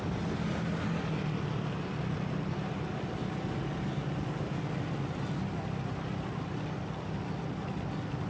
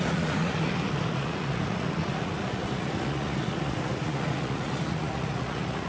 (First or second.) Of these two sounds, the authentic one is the first